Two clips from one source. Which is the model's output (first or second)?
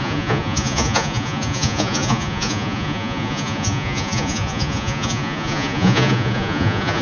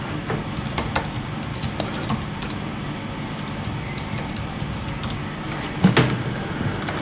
first